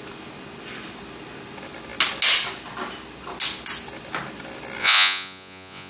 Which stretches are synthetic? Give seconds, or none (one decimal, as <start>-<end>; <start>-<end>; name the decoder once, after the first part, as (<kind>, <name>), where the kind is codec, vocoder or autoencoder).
4.8-5.9 (vocoder, Vocos)